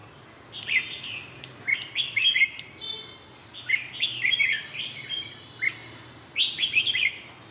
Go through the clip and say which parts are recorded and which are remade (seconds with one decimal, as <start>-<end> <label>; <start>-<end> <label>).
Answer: 0.0-5.8 recorded; 5.8-6.8 remade; 6.8-7.5 recorded